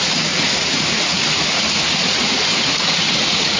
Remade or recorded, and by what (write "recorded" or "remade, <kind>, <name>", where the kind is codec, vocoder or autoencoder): remade, vocoder, Vocos